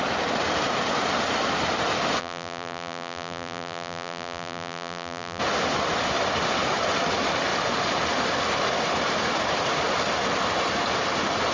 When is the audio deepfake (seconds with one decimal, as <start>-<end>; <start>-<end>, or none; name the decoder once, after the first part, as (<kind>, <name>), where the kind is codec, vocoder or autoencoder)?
2.2-5.4 (vocoder, BigVGAN v2)